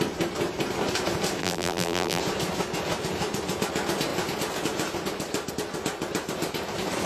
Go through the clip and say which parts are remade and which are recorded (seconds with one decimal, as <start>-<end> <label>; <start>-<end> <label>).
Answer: 0.0-1.4 recorded; 1.4-2.2 remade; 2.2-7.1 recorded

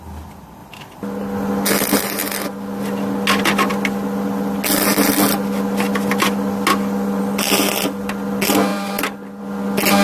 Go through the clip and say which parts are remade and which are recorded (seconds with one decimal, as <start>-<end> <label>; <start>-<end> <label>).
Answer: 0.0-8.7 recorded; 8.7-9.4 remade; 9.4-10.0 recorded

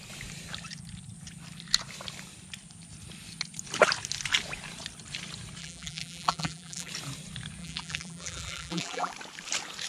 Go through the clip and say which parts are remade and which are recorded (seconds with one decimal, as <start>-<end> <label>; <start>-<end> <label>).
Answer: 0.0-5.6 recorded; 5.6-6.9 remade; 6.9-7.6 recorded; 7.6-9.1 remade; 9.1-9.9 recorded

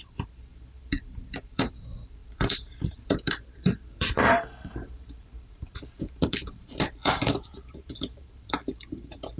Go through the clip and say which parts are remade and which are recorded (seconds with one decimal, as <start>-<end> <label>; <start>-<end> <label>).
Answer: 0.0-9.4 remade

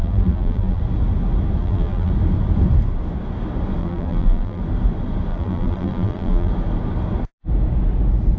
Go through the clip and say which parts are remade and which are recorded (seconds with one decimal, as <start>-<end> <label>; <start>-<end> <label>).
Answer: 0.0-0.8 remade; 0.8-1.6 recorded; 1.6-2.1 remade; 2.1-3.8 recorded; 3.8-4.6 remade; 4.6-5.3 recorded; 5.3-6.5 remade; 6.5-8.4 recorded

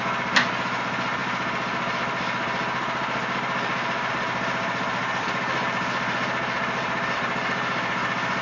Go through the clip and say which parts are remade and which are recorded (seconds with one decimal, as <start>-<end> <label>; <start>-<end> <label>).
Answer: 0.0-8.4 recorded